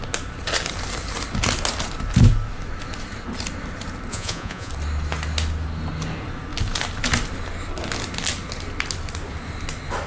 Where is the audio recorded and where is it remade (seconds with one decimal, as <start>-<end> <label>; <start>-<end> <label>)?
0.0-4.1 recorded; 4.1-4.7 remade; 4.7-10.1 recorded